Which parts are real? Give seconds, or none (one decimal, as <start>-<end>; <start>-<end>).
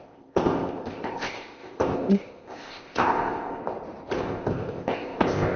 3.6-4.2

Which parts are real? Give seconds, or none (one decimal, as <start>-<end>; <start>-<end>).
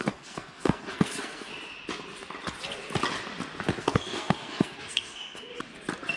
1.5-3.8; 5.5-6.2